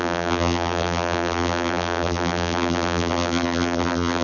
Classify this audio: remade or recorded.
remade